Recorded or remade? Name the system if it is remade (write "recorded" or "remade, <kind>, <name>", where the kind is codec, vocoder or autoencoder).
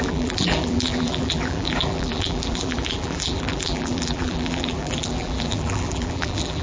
remade, vocoder, BigVGAN v2